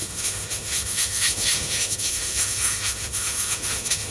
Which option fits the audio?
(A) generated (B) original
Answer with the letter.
A